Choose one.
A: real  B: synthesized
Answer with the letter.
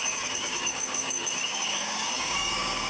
B